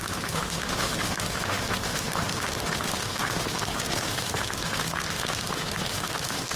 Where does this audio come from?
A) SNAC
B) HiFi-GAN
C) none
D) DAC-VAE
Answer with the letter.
D